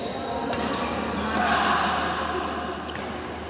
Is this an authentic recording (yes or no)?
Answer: yes